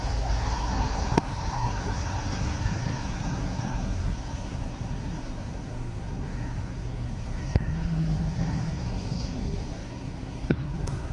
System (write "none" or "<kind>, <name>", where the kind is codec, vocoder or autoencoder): codec, SNAC